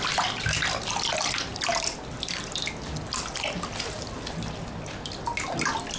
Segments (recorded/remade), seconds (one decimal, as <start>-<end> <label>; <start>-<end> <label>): 0.0-6.0 recorded